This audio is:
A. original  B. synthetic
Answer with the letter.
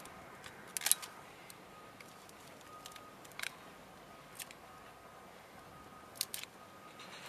A